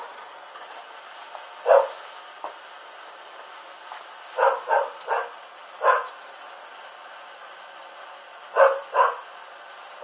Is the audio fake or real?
real